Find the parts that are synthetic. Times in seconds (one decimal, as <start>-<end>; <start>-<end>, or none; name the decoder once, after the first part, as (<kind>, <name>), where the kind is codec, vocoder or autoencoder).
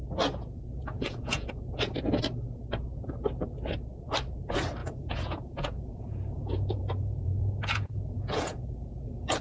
0.8-1.5 (vocoder, Vocos); 4.8-9.4